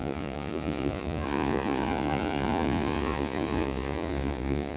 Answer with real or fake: fake